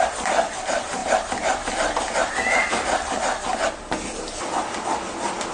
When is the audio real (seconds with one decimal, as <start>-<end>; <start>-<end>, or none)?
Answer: 0.0-5.5